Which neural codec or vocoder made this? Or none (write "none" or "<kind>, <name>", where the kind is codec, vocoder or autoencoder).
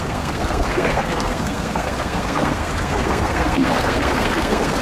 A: codec, SNAC